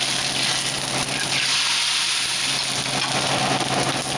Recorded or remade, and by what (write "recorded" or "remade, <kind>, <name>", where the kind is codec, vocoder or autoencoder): recorded